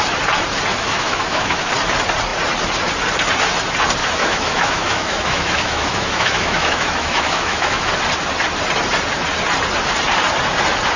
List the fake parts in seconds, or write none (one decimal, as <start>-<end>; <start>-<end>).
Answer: 0.7-1.7; 4.0-7.9